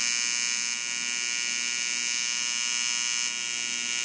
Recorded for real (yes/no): yes